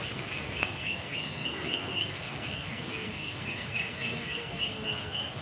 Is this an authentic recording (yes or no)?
no